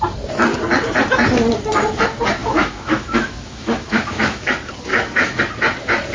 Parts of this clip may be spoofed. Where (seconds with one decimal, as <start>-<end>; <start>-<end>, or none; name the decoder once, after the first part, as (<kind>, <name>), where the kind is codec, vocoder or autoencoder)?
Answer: 2.4-4.5 (autoencoder, DAC-VAE); 4.9-5.4